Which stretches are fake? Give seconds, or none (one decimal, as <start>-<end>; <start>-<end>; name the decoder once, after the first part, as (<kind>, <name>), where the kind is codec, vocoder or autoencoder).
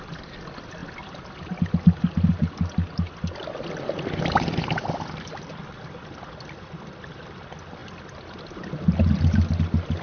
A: none